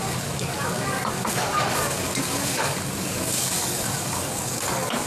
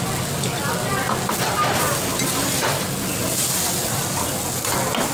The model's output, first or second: first